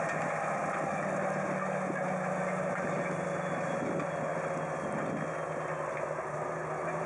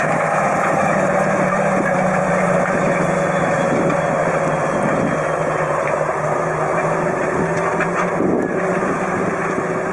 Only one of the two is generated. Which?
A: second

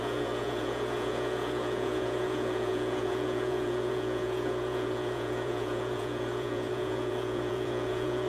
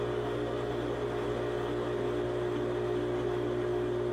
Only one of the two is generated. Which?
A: first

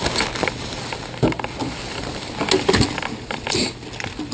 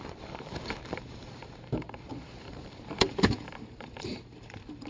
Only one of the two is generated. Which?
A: second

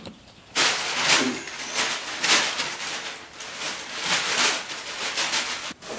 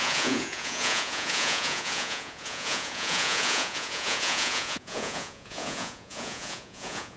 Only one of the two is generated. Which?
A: second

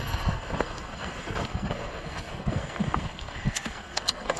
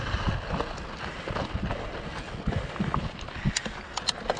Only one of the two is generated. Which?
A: first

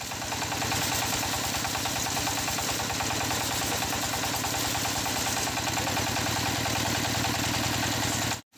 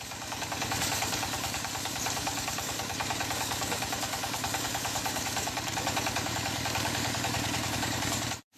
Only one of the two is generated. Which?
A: second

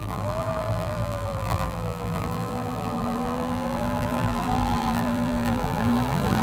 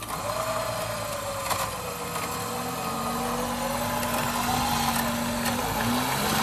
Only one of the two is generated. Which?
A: first